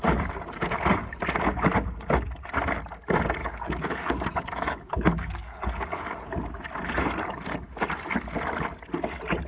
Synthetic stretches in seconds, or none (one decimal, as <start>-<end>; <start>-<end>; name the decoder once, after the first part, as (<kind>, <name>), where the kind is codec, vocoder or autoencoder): 3.4-6.2 (codec, DAC)